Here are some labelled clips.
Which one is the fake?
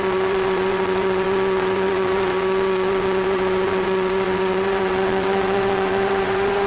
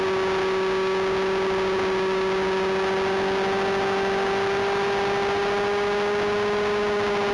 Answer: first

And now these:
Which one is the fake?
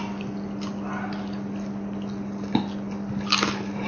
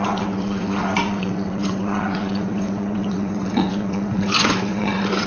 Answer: second